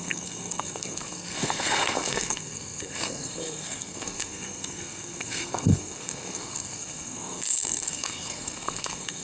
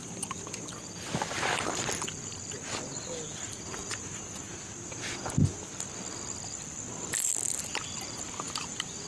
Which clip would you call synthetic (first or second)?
first